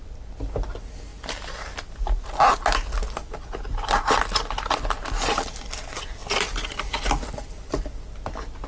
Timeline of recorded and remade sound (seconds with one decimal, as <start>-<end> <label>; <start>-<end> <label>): 0.0-8.7 recorded